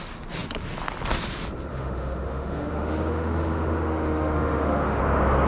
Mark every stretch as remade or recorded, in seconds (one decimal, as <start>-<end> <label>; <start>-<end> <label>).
0.0-1.7 recorded; 1.7-5.0 remade; 5.0-5.5 recorded